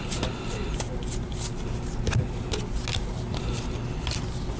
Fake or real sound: real